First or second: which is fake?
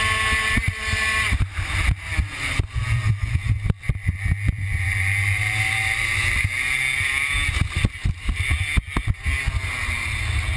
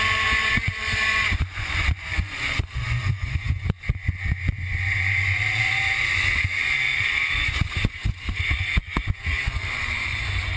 second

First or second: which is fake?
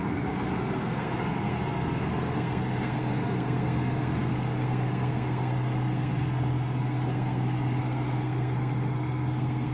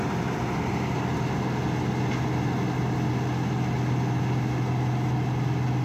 first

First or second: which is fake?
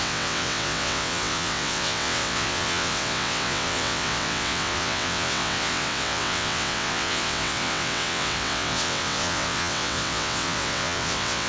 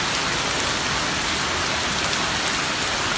first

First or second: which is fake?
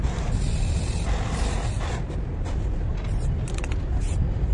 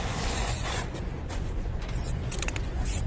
second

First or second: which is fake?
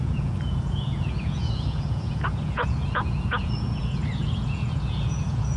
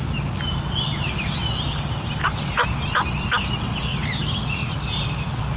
first